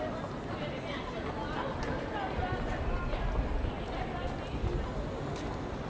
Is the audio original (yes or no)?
yes